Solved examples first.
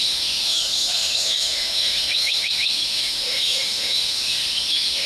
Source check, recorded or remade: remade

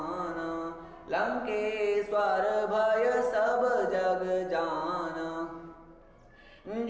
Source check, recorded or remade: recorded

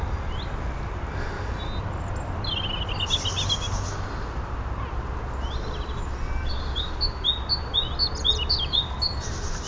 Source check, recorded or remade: recorded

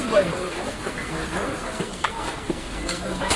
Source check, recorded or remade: remade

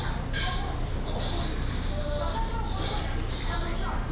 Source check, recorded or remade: recorded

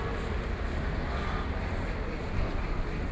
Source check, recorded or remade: recorded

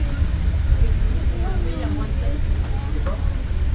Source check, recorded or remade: recorded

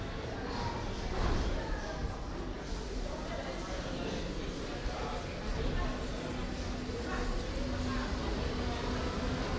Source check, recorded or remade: recorded